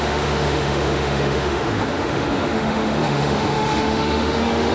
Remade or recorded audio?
remade